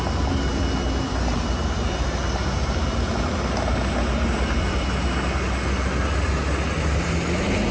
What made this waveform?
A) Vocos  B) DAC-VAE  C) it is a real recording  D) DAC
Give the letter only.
C